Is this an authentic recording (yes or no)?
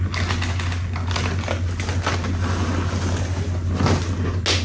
yes